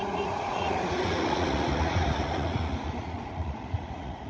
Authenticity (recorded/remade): remade